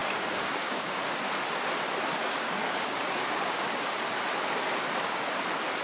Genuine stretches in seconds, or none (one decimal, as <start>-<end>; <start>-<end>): 1.0-2.2; 3.8-5.8